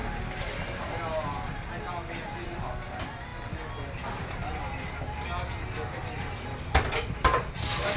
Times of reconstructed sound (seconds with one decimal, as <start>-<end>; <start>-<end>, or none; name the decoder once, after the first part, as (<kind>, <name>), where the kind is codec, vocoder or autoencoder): none